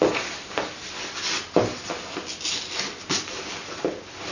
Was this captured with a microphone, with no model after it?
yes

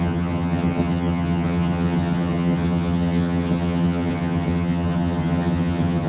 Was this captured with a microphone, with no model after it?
no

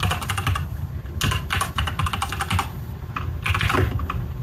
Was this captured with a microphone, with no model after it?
yes